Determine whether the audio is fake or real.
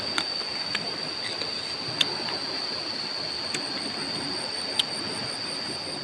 real